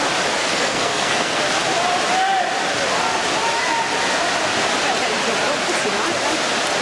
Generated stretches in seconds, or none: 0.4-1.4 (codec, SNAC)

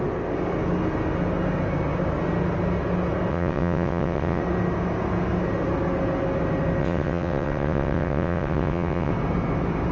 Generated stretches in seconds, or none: 3.3-4.4 (vocoder, WaveNeXt); 6.8-9.1

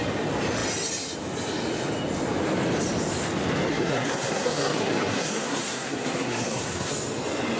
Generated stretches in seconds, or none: 3.7-6.9 (codec, SNAC)

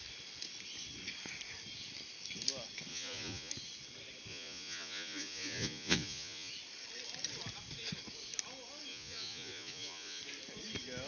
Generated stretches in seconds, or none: 2.9-3.5 (vocoder, Vocos); 4.3-6.5; 8.9-10.2

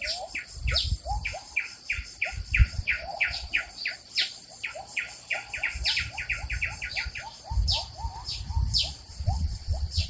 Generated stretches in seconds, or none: 2.6-3.6 (vocoder, WaveNeXt); 9.1-10.1

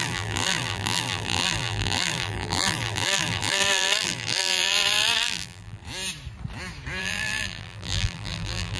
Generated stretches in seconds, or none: 0.0-5.8 (vocoder, BigVGAN v2); 7.0-8.8

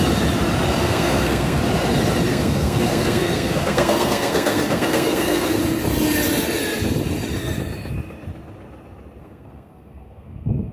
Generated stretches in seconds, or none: 0.8-1.6 (codec, SNAC); 2.3-5.6; 9.2-10.7

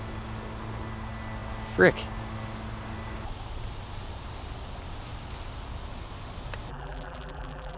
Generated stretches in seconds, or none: 6.7-7.8 (vocoder, BigVGAN v2)